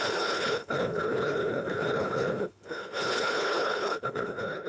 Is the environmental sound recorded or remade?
remade